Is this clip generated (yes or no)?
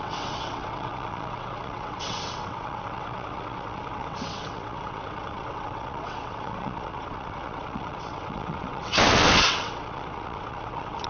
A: yes